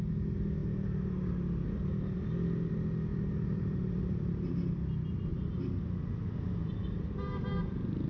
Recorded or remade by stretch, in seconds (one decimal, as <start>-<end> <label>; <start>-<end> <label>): 0.0-3.1 recorded; 3.1-4.7 remade; 4.7-5.3 recorded; 5.3-5.8 remade; 5.8-8.1 recorded